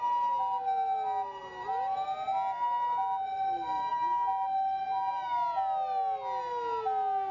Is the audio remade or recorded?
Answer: recorded